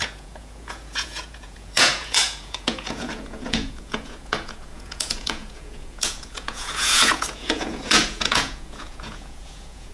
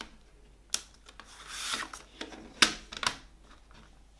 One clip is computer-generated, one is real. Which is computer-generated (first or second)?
first